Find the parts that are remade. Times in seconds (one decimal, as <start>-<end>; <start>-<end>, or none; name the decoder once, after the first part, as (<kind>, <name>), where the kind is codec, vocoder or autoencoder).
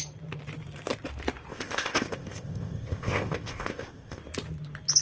1.5-4.2 (codec, ZipCodec)